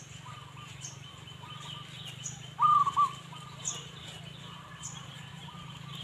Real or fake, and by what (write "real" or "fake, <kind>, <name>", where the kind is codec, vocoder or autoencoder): real